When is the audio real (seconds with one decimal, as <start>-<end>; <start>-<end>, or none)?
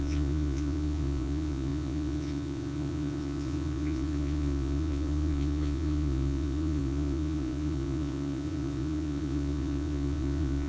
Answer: none